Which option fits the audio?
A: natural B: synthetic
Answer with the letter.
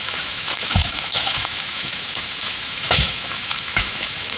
B